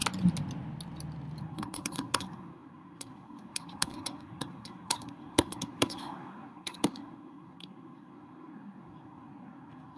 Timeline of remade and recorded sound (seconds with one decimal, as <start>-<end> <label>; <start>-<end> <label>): 0.0-1.4 recorded; 1.4-10.0 remade